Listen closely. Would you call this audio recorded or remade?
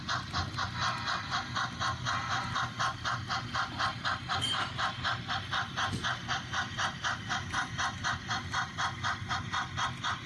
recorded